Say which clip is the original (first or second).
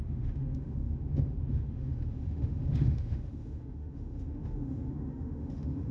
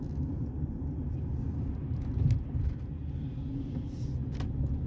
second